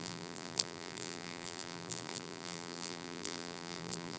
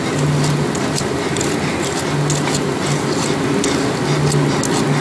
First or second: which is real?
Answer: second